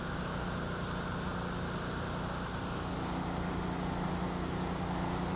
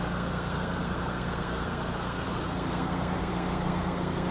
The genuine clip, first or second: first